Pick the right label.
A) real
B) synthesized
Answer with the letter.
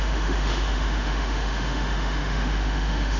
B